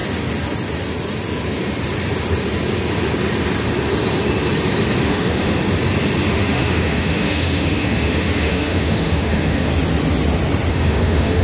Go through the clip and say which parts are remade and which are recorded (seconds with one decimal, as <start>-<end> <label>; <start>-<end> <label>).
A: 0.0-5.0 recorded; 5.0-5.6 remade; 5.6-6.3 recorded; 6.3-9.7 remade; 9.7-10.7 recorded; 10.7-11.4 remade